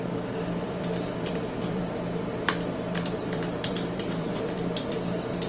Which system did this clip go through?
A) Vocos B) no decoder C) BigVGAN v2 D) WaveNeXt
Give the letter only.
C